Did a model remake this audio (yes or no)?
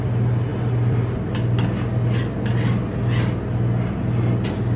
no